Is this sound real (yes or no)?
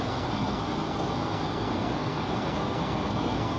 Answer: no